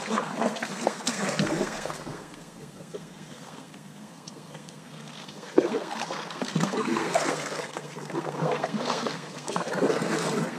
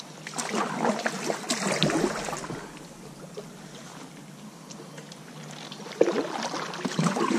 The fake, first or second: first